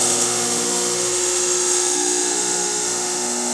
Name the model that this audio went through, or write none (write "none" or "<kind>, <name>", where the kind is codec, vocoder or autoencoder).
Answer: autoencoder, DAC-VAE